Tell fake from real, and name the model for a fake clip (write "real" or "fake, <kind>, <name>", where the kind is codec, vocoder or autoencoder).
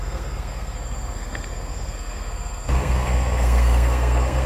fake, codec, SNAC